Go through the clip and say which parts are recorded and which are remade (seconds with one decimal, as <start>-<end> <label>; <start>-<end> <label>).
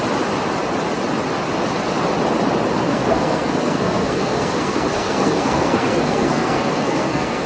0.0-2.8 recorded; 2.8-7.5 remade